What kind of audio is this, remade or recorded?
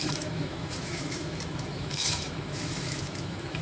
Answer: remade